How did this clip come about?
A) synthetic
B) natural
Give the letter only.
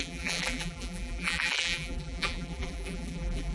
A